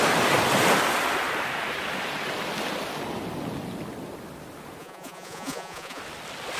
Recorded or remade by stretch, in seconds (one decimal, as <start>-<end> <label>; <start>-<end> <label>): 0.0-4.8 recorded; 4.8-6.0 remade; 6.0-6.6 recorded